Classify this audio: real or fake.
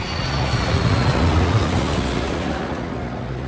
fake